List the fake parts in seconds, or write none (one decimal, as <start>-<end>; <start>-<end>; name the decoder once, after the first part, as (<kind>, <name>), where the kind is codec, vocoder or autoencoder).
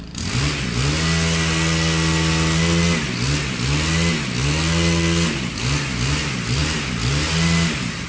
none